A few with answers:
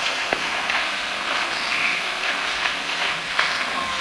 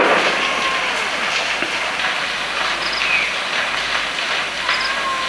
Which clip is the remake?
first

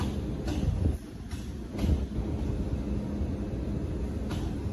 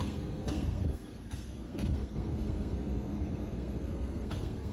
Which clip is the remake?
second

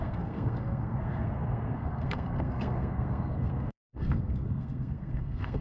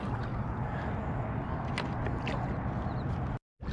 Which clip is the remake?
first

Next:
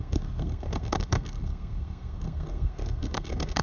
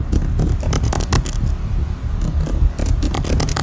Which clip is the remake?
first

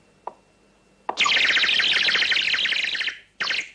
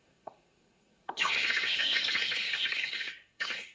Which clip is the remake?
second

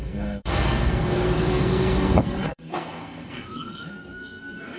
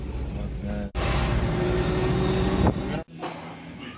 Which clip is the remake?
first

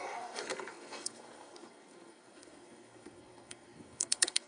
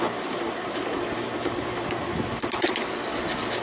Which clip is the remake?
first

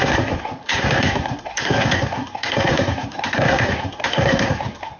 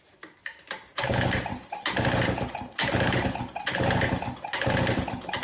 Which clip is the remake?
first